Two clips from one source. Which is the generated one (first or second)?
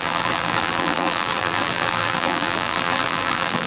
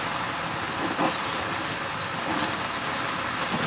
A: first